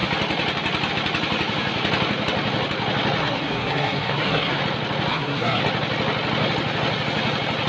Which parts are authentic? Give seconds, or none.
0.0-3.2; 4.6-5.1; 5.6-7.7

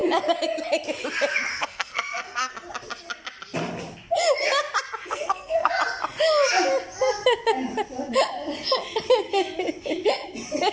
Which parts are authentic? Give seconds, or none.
0.0-1.5; 2.5-5.0; 5.7-10.7

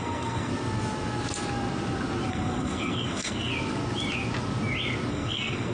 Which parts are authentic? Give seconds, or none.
0.5-2.3; 3.5-5.1

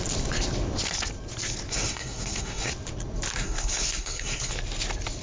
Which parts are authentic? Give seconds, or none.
0.0-1.7; 2.7-3.4; 4.5-5.2

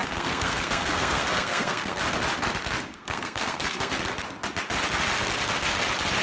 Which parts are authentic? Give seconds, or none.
2.0-2.9; 3.9-6.2

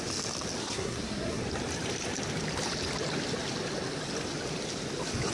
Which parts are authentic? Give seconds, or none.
0.0-0.6; 1.4-5.3

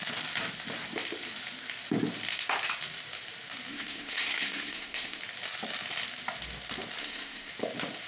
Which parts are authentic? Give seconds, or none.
0.0-3.7; 5.2-7.0; 7.5-8.1